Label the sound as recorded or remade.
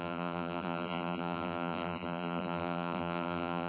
remade